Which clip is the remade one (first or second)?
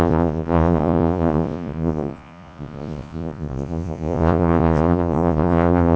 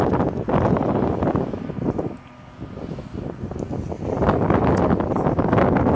first